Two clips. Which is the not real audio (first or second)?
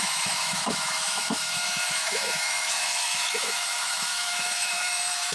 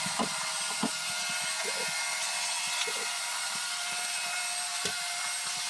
first